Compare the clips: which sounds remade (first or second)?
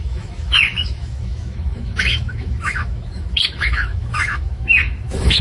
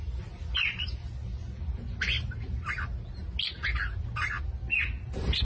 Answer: first